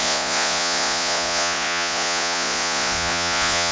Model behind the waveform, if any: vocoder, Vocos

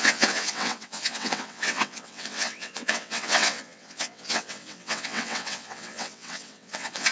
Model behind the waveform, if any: vocoder, WaveNeXt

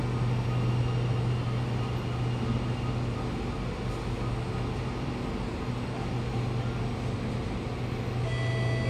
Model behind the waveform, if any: none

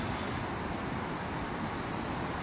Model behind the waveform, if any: none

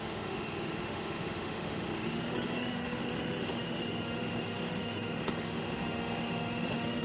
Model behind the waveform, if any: autoencoder, DAC-VAE